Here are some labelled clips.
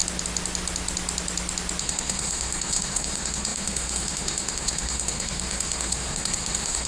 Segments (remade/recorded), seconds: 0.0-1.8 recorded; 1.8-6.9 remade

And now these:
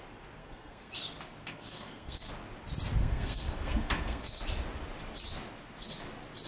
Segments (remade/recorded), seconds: 0.0-0.4 recorded; 0.4-0.9 remade; 0.9-1.4 recorded; 1.4-2.3 remade; 2.3-3.0 recorded; 3.0-4.4 remade; 4.4-6.5 recorded

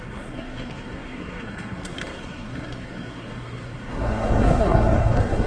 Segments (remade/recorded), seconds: 0.0-5.5 remade

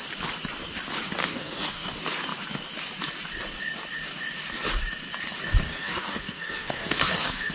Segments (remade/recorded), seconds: 0.0-1.2 recorded; 1.2-1.9 remade; 1.9-5.7 recorded; 5.7-7.5 remade

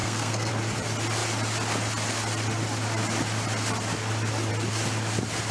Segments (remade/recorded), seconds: 0.0-0.5 remade; 0.5-5.5 recorded

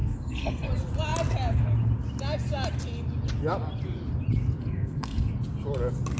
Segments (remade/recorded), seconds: 0.0-0.7 remade; 0.7-4.6 recorded; 4.6-5.3 remade; 5.3-6.2 recorded

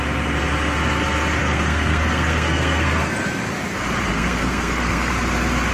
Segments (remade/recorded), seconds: 0.0-1.4 recorded; 1.4-3.1 remade; 3.1-4.1 recorded; 4.1-5.1 remade; 5.1-5.7 recorded

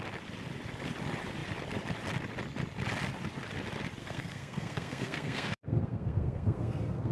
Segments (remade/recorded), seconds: 0.0-4.0 recorded; 4.0-7.1 remade